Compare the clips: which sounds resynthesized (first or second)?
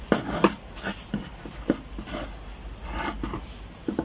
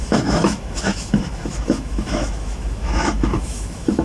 second